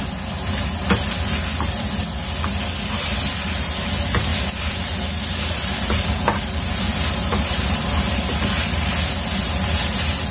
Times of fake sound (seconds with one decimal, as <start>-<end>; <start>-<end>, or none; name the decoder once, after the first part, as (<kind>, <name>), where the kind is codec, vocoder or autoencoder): none